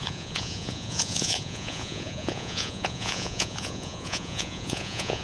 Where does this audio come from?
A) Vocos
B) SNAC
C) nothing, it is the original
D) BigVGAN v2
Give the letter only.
A